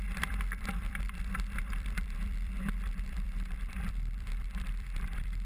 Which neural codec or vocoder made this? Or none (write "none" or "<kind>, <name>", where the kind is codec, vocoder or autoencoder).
vocoder, BigVGAN v2